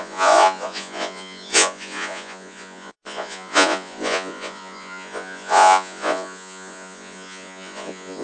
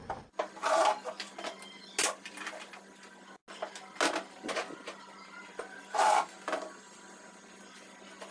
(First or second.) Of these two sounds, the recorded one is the second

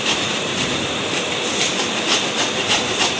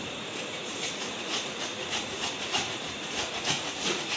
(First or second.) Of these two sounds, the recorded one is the first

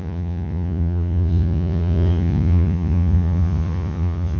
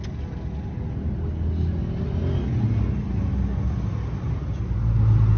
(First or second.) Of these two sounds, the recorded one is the second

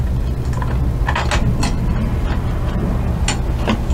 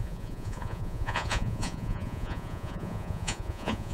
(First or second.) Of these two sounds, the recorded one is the first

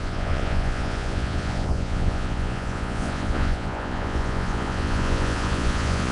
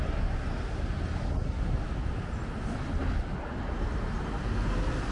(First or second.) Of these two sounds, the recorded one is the second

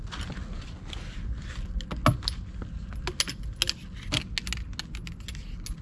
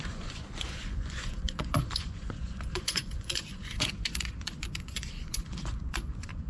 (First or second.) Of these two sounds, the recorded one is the first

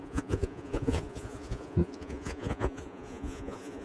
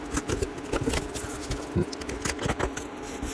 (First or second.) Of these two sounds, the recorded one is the second